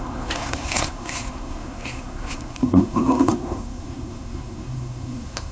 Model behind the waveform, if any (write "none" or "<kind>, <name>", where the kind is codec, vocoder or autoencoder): codec, SNAC